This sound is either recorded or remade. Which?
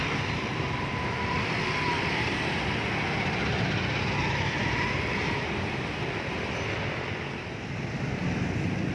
recorded